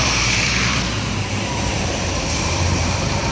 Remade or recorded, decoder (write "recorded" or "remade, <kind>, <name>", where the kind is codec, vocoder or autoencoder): remade, vocoder, BigVGAN v2